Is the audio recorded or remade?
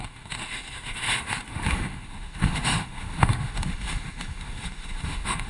remade